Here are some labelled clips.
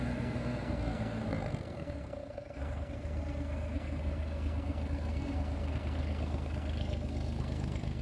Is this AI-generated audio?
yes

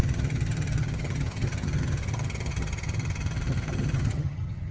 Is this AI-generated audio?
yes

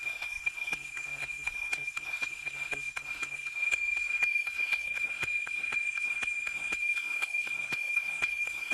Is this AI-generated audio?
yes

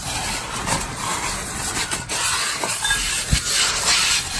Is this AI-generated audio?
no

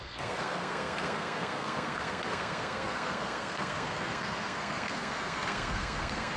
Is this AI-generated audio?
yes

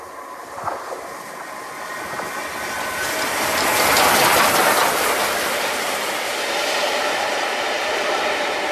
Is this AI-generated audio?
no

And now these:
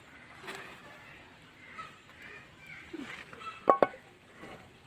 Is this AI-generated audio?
no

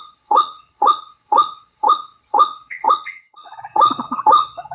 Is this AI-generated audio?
yes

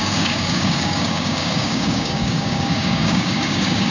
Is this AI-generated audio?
yes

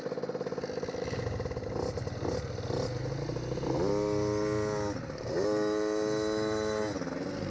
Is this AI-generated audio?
no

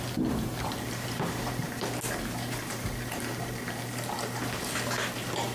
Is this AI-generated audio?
no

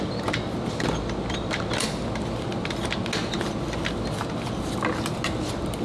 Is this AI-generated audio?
no